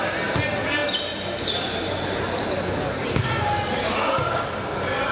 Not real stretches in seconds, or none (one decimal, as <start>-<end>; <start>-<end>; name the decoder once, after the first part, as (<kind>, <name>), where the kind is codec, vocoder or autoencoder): 3.0-4.5 (codec, DAC)